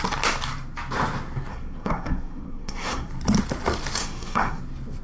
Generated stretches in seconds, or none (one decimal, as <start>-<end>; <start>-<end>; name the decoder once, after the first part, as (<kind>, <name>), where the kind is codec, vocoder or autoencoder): 1.5-3.1 (codec, SNAC); 4.0-4.6